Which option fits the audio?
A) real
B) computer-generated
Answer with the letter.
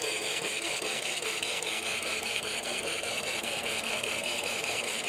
B